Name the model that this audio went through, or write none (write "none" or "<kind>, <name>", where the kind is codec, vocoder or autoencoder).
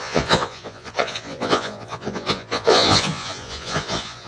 vocoder, Vocos